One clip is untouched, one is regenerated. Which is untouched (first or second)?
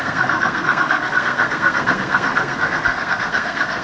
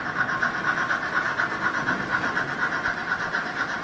second